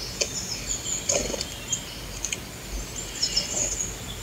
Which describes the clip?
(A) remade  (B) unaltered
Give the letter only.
B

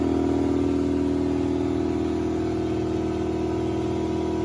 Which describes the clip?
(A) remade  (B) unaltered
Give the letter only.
B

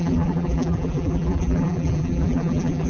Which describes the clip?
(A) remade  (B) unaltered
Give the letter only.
A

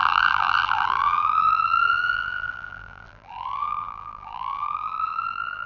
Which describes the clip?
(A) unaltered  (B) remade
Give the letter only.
B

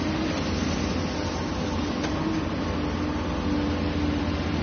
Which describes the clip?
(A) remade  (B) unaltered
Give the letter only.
B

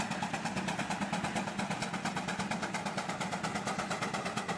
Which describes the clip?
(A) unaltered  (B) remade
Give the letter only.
A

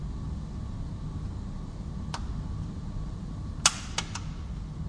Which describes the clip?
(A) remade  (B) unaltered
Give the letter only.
B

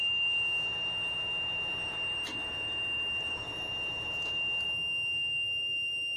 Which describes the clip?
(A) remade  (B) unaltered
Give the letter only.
A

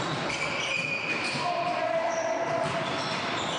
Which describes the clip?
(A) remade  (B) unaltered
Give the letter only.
A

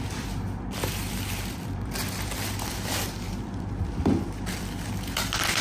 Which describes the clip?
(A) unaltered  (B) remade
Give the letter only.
B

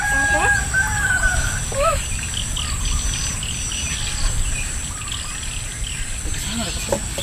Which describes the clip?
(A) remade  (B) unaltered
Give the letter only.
B